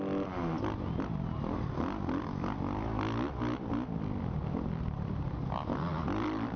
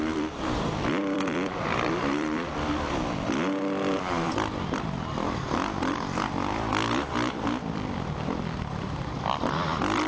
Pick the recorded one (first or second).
first